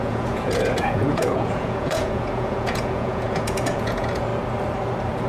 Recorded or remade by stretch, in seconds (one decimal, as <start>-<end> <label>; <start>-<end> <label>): 0.0-4.3 remade; 4.3-5.3 recorded